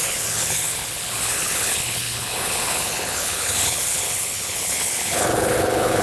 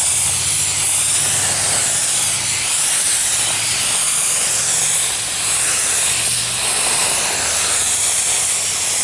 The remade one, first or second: first